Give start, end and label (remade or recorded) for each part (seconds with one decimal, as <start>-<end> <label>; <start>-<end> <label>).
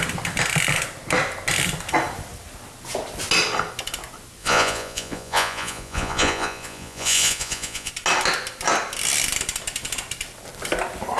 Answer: 0.0-4.4 recorded; 4.4-7.9 remade; 7.9-11.2 recorded